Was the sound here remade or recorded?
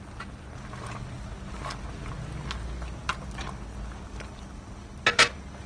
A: recorded